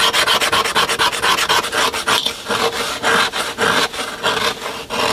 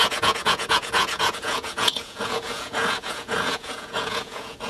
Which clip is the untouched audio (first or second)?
first